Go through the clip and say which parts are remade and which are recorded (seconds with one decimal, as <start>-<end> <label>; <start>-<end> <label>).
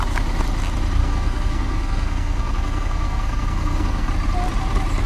0.0-1.0 recorded; 1.0-4.1 remade; 4.1-5.1 recorded